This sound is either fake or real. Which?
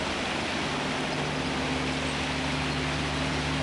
real